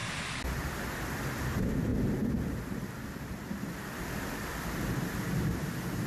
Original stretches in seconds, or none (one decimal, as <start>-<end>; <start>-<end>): 0.0-6.1